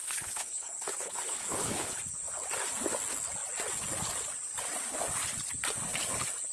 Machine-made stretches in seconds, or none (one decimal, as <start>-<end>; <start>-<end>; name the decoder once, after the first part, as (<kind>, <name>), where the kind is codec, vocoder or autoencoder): 0.0-1.9 (codec, HILCodec)